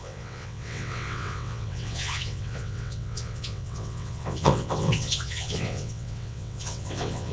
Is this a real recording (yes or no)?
no